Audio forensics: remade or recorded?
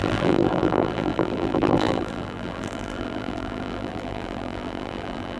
remade